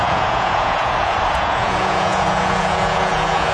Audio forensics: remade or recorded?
remade